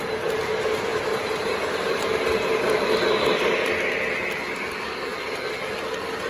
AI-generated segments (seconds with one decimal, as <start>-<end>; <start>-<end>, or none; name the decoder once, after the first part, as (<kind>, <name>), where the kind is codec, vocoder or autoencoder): 0.9-3.7 (vocoder, BigVGAN v2); 5.1-5.7